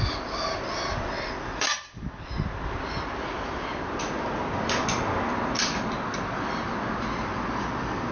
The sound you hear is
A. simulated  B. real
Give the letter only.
B